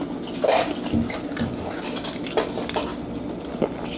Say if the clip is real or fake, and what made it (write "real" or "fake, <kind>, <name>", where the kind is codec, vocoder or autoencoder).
real